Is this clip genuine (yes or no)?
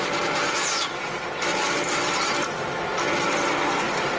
no